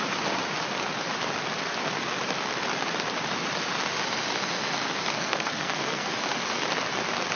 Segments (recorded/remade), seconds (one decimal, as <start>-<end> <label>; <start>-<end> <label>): 0.0-5.1 recorded; 5.1-6.1 remade; 6.1-7.4 recorded